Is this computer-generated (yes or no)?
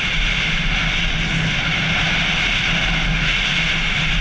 no